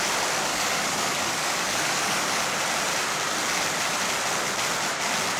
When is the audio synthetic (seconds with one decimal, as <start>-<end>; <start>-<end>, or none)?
0.5-2.4